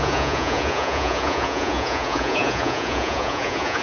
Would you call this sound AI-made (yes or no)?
yes